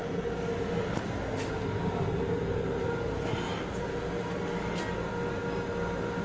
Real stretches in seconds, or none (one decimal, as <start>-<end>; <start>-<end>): 0.0-6.2